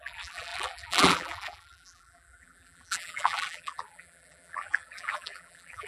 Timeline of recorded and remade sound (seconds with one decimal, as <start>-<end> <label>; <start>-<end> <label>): 0.0-5.9 remade

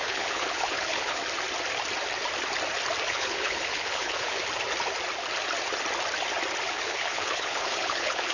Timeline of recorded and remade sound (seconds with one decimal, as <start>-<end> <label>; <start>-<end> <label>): 0.0-1.2 remade; 1.2-3.1 recorded; 3.1-4.4 remade; 4.4-6.7 recorded; 6.7-8.3 remade

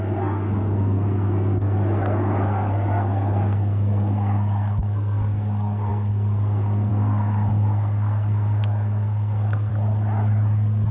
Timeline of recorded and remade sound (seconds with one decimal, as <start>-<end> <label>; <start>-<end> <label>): 0.0-9.7 remade; 9.7-10.9 recorded